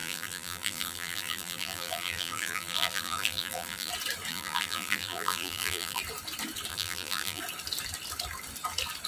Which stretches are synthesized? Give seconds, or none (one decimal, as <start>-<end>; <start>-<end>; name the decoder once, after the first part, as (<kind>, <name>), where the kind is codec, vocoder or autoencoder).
0.0-3.9 (vocoder, BigVGAN v2); 4.3-6.0; 6.7-7.4